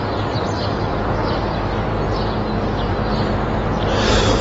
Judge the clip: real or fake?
real